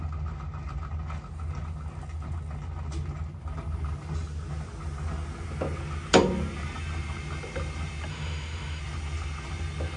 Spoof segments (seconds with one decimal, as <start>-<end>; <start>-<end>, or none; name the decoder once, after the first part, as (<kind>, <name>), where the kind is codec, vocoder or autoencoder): 8.1-8.8 (autoencoder, DAC-VAE)